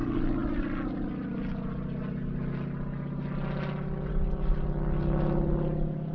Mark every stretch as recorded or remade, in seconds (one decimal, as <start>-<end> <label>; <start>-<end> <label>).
0.0-6.1 recorded